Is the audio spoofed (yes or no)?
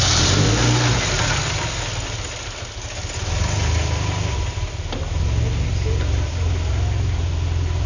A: no